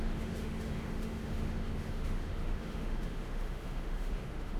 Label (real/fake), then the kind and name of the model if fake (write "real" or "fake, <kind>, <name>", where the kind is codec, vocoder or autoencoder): fake, autoencoder, DAC-VAE